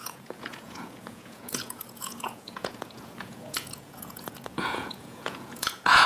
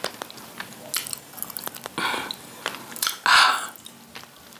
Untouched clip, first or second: second